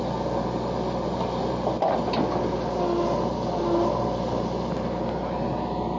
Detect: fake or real real